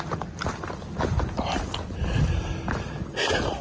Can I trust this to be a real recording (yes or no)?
yes